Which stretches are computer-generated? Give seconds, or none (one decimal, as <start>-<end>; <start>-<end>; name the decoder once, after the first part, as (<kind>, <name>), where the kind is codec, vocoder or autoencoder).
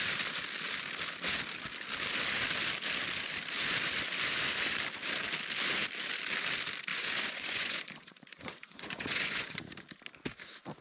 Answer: 6.9-9.6 (vocoder, Vocos)